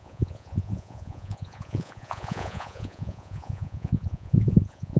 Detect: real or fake fake